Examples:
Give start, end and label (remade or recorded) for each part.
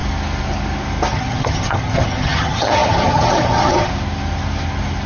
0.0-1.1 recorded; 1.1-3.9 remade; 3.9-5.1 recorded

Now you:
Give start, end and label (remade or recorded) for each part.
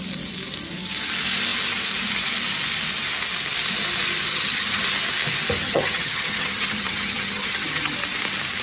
0.0-4.3 recorded; 4.3-4.8 remade; 4.8-5.6 recorded; 5.6-8.0 remade; 8.0-8.6 recorded